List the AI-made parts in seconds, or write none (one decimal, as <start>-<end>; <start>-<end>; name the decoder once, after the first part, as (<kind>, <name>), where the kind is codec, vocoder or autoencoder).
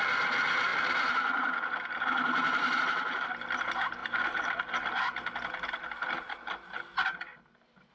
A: 4.0-4.7 (vocoder, BigVGAN v2)